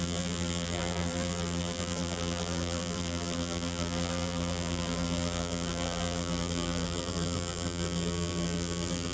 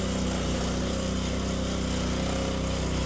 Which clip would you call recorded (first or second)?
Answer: second